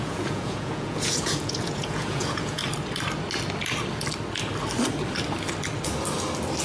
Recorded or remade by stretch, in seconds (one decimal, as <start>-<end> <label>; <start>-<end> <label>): 0.0-2.6 remade; 2.6-6.6 recorded